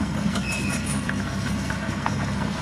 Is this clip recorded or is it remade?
remade